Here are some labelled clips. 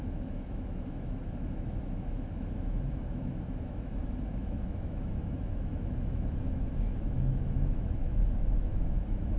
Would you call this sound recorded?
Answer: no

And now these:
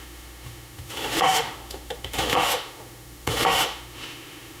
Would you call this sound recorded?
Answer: no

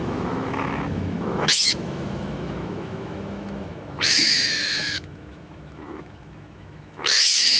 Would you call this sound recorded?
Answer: no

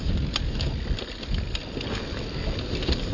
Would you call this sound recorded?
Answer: yes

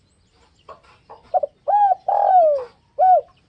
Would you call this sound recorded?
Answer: yes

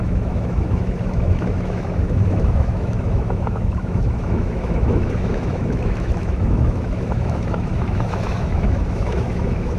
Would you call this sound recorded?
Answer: no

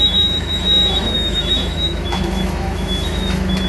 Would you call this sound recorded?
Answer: no